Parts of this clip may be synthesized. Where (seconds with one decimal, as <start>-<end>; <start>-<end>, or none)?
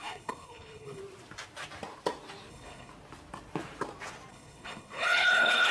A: 0.0-1.0; 2.5-2.9; 4.3-5.7